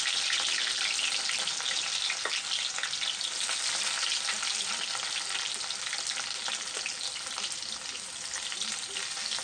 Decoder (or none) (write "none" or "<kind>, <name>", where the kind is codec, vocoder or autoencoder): none